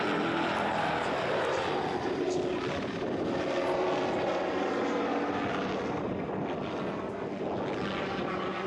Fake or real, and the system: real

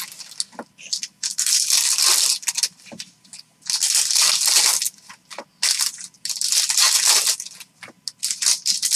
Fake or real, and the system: real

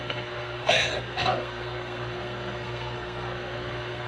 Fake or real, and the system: fake, codec, SNAC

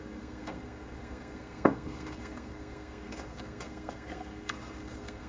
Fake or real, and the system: fake, codec, SNAC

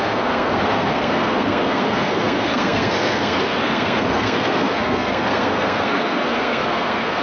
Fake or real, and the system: fake, codec, SNAC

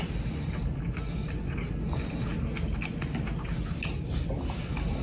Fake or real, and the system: real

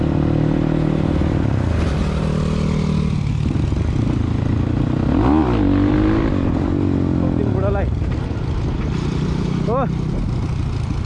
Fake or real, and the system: real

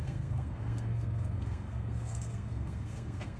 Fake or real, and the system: fake, codec, SNAC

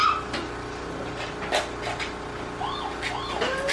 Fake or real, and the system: real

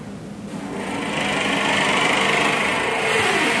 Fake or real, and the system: real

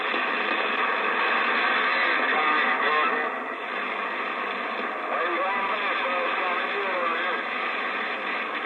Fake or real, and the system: real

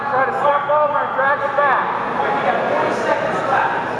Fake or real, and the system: real